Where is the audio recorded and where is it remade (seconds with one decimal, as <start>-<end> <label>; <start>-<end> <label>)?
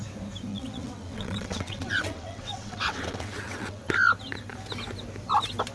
0.0-0.5 recorded; 0.5-3.9 remade; 3.9-5.7 recorded